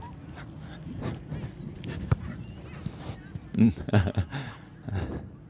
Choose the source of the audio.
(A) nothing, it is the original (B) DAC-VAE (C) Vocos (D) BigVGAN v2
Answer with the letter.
A